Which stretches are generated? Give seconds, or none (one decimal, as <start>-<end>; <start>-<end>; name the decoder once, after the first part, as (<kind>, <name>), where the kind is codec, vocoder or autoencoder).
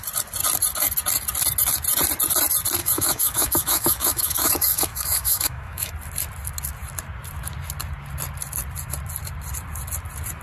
2.8-5.9 (autoencoder, DAC-VAE)